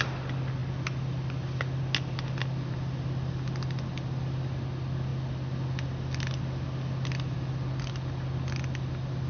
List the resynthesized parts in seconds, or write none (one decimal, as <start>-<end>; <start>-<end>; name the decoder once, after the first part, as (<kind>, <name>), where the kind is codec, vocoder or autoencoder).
none